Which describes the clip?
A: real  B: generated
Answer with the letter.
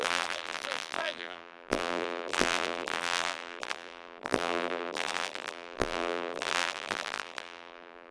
B